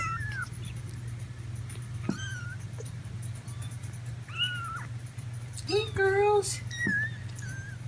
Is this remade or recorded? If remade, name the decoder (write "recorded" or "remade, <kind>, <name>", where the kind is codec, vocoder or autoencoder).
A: recorded